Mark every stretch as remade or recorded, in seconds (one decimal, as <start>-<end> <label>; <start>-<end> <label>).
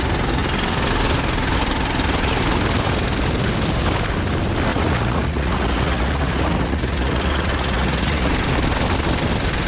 0.0-4.7 recorded; 4.7-8.3 remade; 8.3-9.7 recorded